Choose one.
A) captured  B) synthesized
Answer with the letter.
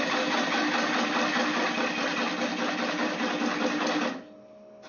A